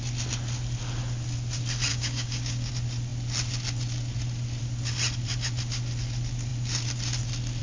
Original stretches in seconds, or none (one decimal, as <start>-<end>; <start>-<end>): 0.0-1.9; 2.7-7.6

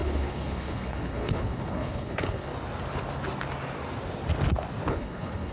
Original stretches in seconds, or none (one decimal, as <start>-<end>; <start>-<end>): 2.5-4.9

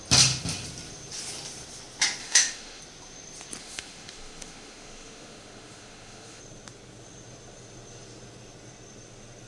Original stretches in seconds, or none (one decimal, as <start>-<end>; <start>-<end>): 0.0-2.2; 2.8-3.6; 6.4-9.5

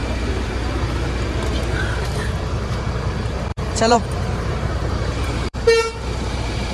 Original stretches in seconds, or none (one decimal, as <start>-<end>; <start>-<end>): 0.0-3.5

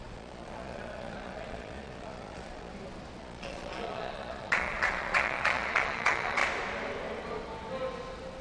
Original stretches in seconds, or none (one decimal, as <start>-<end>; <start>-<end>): 2.7-3.2; 6.4-8.4